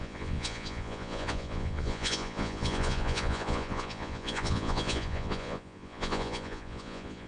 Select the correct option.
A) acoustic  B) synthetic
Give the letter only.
B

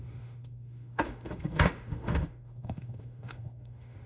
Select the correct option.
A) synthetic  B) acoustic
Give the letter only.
A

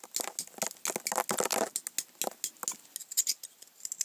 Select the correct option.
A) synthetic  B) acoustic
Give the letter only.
B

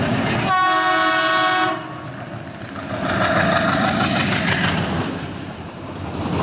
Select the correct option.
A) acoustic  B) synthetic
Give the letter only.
A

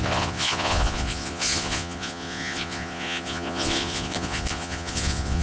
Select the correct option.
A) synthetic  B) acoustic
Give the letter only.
A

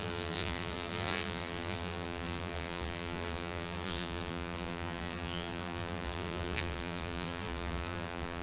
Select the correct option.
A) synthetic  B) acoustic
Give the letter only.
A